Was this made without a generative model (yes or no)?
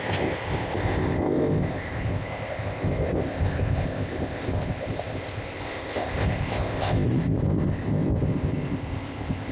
no